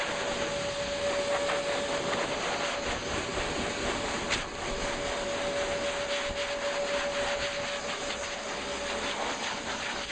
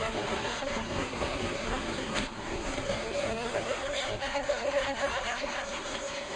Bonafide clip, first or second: first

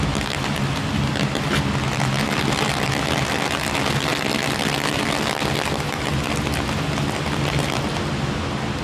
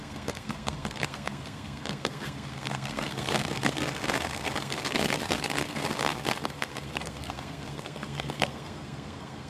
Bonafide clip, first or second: first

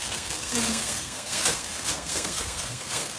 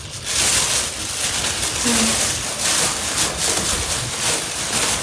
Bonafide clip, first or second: second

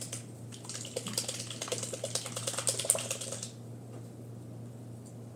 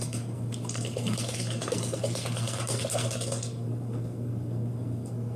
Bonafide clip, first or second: first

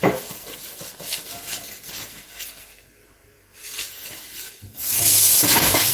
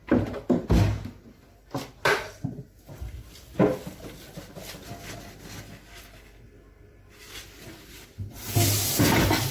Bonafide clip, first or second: second